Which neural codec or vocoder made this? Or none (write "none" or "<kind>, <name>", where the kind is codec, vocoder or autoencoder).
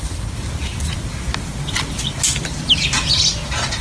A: none